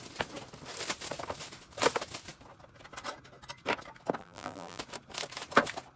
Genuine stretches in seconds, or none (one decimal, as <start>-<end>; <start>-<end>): 0.0-4.2; 4.8-6.0